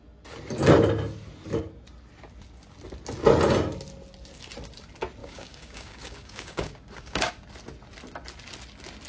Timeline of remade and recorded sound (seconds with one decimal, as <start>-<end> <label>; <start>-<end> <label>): 0.0-5.2 recorded; 5.2-7.3 remade; 7.3-9.1 recorded